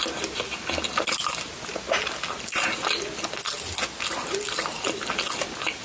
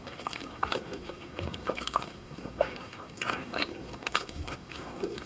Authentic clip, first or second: first